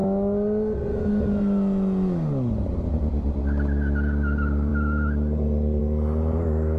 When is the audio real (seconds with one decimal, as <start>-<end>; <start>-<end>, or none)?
0.0-6.8